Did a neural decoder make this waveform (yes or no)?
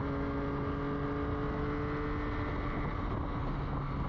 no